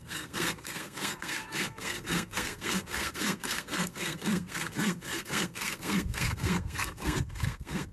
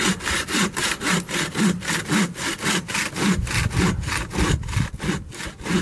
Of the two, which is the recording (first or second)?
second